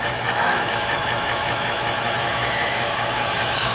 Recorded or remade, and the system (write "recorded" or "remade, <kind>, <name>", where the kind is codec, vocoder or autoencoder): remade, autoencoder, DAC-VAE